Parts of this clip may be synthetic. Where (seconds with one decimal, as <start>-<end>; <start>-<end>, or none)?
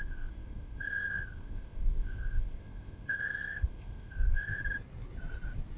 0.0-4.6